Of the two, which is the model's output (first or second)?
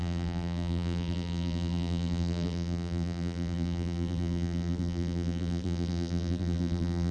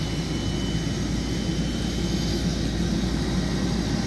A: first